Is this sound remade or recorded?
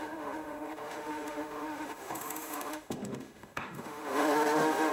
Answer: remade